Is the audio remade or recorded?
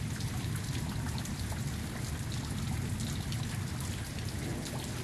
recorded